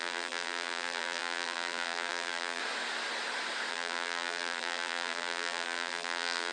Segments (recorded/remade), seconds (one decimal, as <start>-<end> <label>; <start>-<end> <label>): 0.0-2.6 remade; 2.6-3.7 recorded; 3.7-6.5 remade